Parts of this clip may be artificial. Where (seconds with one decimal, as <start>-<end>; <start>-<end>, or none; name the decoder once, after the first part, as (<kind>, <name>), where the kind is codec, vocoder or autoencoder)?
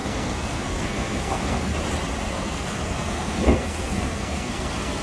0.0-1.7 (codec, SNAC); 2.3-5.0